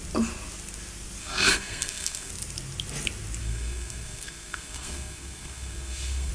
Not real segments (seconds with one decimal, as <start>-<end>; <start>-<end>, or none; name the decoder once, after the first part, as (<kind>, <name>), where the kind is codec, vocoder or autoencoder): 1.2-2.3 (codec, SNAC); 3.4-6.3